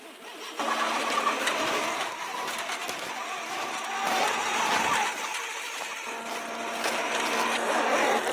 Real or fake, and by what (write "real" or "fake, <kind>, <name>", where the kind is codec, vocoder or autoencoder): real